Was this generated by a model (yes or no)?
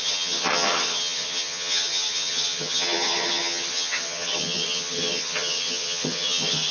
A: yes